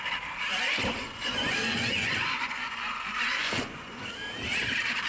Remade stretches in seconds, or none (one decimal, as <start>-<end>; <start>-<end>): 0.9-4.0